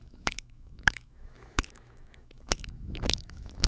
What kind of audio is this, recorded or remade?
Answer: remade